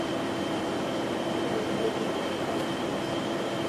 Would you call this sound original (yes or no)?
no